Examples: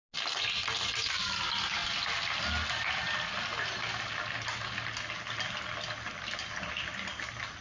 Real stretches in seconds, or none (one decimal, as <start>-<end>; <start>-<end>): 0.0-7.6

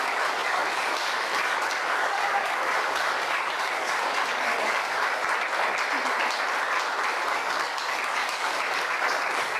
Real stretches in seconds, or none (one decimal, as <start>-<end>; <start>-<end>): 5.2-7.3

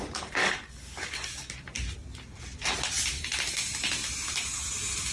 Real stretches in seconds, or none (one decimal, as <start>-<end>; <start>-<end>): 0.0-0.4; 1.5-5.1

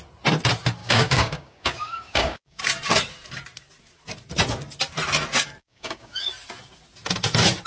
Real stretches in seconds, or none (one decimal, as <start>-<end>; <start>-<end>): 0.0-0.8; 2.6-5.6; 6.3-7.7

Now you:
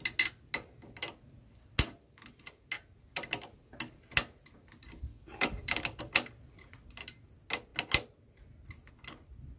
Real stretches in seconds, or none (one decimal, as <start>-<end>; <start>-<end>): 0.0-5.1; 6.0-9.6

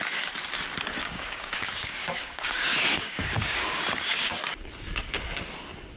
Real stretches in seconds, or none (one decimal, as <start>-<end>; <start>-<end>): 0.0-1.0; 4.4-6.0

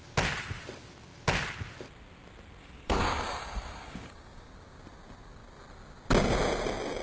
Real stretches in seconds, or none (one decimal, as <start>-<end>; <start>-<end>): 0.0-2.6; 4.5-7.0

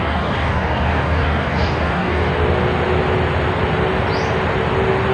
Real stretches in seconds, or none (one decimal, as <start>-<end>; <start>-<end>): 2.3-5.1